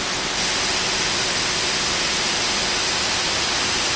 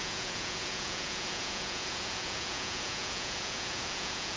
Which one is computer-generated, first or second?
second